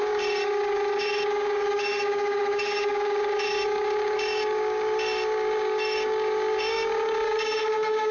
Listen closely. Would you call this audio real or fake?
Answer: fake